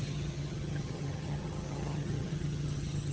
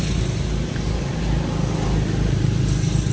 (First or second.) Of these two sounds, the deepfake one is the first